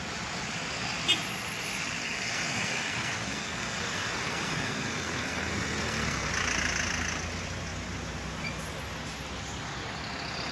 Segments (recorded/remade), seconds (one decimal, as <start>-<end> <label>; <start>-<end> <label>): 0.0-2.0 recorded; 2.0-6.3 remade; 6.3-10.5 recorded